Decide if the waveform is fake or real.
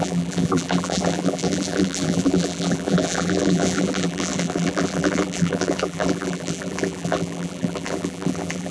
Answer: fake